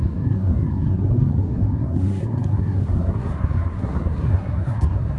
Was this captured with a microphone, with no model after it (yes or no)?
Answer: no